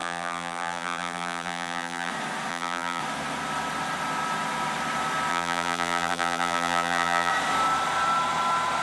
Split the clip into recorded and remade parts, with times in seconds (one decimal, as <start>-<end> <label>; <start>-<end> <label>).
0.0-2.1 remade; 2.1-2.5 recorded; 2.5-3.0 remade; 3.0-5.3 recorded; 5.3-7.3 remade; 7.3-8.8 recorded

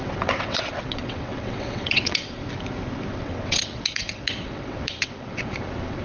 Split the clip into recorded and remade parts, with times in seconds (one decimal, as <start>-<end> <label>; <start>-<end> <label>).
0.0-2.4 remade; 2.4-3.1 recorded; 3.1-6.0 remade

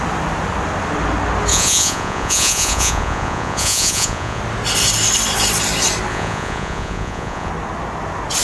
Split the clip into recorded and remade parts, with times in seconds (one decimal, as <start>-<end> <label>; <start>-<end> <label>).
0.0-1.5 recorded; 1.5-4.4 remade; 4.4-6.1 recorded; 6.1-7.5 remade; 7.5-8.4 recorded

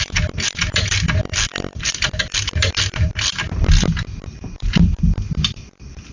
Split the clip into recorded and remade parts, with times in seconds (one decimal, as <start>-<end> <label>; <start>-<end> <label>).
0.0-6.1 recorded

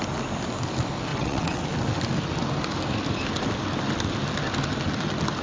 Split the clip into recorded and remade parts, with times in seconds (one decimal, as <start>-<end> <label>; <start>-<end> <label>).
0.0-1.1 recorded; 1.1-1.6 remade; 1.6-5.4 recorded

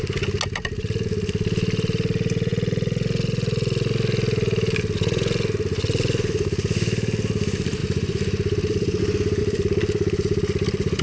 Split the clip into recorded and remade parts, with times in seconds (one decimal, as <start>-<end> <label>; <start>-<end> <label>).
0.0-7.8 recorded; 7.8-9.0 remade; 9.0-9.4 recorded; 9.4-11.0 remade

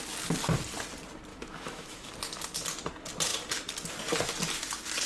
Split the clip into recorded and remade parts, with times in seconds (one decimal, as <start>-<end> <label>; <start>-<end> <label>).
0.0-1.3 recorded; 1.3-2.1 remade; 2.1-5.1 recorded

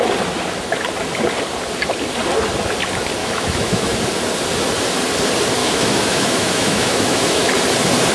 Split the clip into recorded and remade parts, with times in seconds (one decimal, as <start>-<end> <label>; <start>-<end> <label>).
0.0-3.2 recorded; 3.2-3.9 remade; 3.9-5.6 recorded; 5.6-7.5 remade; 7.5-8.1 recorded